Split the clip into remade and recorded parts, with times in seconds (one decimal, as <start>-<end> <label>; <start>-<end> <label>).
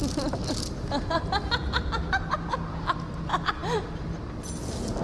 0.0-5.0 recorded